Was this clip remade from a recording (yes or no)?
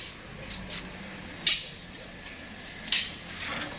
no